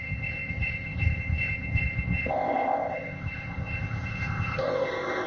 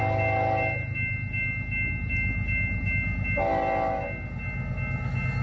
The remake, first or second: first